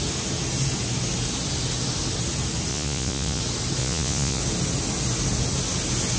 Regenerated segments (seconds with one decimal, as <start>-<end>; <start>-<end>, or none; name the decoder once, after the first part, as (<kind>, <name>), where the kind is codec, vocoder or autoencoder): 2.7-3.4 (vocoder, Vocos); 3.8-4.4